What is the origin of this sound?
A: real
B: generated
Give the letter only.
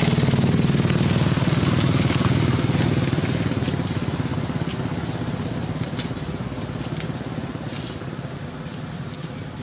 A